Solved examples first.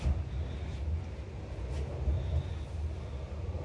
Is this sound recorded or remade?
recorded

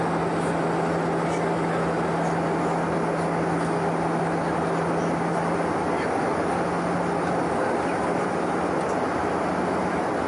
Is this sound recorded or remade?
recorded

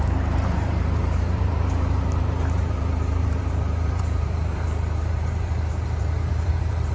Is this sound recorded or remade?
remade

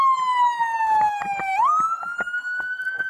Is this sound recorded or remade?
recorded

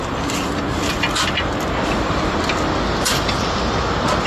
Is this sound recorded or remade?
recorded